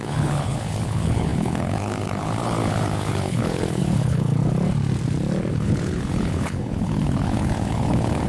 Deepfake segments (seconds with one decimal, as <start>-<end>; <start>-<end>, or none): 0.0-4.4; 5.5-8.3